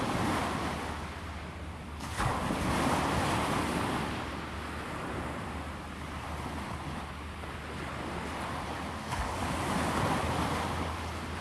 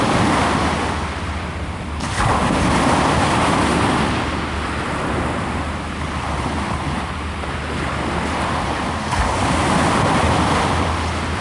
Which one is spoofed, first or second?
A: second